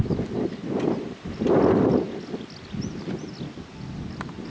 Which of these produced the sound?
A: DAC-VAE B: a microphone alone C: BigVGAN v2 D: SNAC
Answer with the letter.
B